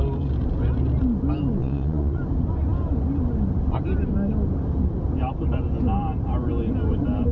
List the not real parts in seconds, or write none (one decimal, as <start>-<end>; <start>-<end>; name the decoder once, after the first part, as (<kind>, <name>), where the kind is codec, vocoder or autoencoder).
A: 1.6-2.2 (vocoder, Vocos)